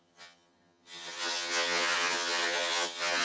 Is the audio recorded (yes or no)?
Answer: no